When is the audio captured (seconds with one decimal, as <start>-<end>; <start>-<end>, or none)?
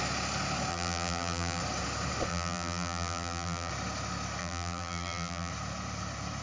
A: 0.0-0.7; 1.6-2.3; 3.7-4.4; 5.5-6.4